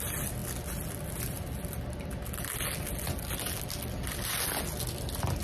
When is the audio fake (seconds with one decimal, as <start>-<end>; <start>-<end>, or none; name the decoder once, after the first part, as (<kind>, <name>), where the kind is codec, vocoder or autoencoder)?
none